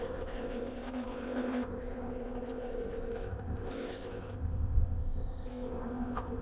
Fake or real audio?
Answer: fake